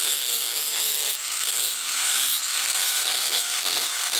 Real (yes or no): no